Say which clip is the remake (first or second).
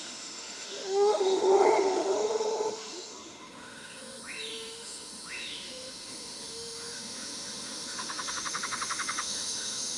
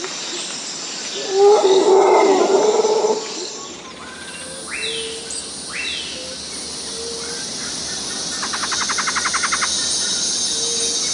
first